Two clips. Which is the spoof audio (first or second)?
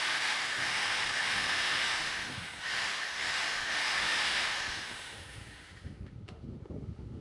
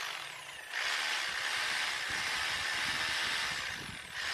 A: first